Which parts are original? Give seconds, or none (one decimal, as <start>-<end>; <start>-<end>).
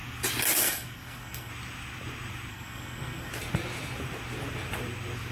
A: 0.0-0.6; 1.5-2.5; 3.3-5.3